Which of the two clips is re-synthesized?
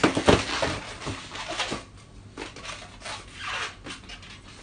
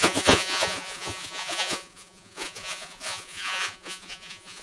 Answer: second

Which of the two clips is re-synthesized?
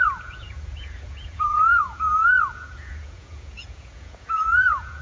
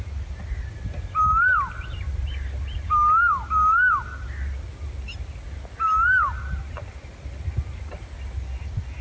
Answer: first